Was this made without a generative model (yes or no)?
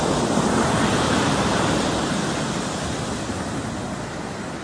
yes